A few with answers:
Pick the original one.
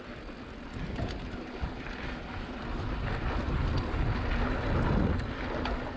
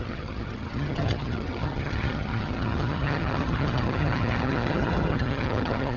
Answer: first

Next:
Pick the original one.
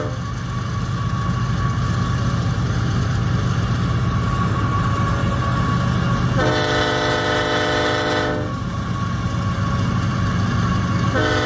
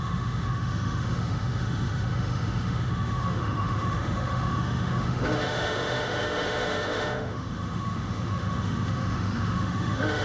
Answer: first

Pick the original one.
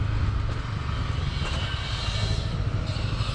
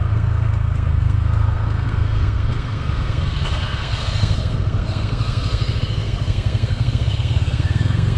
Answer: first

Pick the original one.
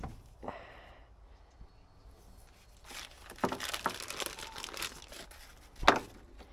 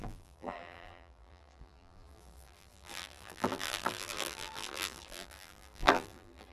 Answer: first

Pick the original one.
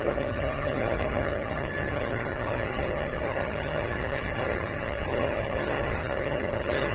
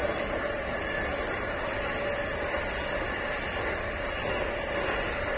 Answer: second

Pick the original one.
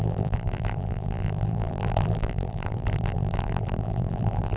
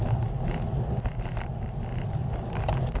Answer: second